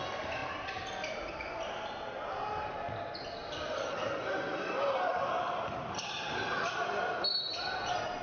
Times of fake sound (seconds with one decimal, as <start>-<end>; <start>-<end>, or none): 0.4-1.1; 3.4-7.3